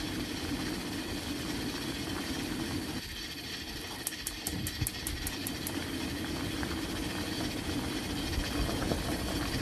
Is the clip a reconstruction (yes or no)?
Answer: no